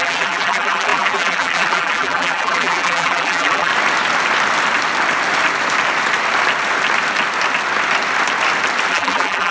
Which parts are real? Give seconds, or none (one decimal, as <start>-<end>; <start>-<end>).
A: 3.7-8.9